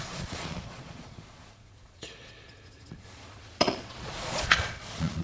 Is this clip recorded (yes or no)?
no